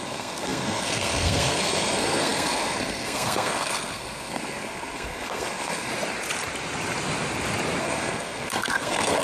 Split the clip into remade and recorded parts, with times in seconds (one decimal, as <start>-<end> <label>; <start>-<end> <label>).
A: 0.0-5.9 remade; 5.9-7.8 recorded; 7.8-9.2 remade